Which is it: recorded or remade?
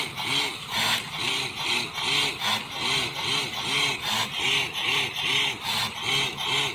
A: recorded